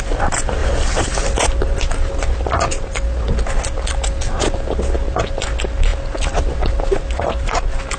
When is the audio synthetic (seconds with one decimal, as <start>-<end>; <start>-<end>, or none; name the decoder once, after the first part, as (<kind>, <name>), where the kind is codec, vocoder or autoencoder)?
none